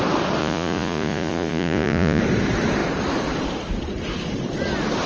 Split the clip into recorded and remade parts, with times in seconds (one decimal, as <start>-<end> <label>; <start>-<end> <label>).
0.0-0.4 recorded; 0.4-2.2 remade; 2.2-5.1 recorded